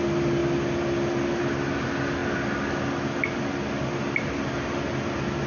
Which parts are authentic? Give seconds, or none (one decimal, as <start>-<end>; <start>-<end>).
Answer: 0.0-5.5